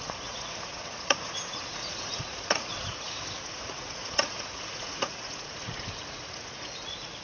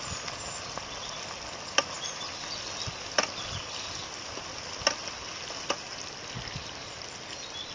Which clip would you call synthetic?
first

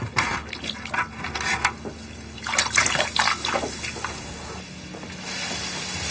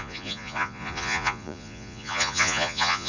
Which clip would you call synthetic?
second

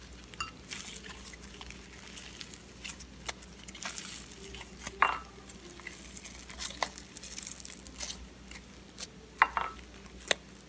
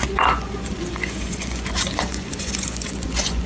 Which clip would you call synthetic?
second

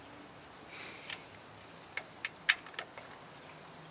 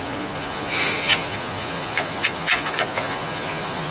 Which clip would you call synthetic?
second